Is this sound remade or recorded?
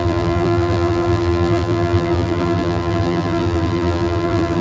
remade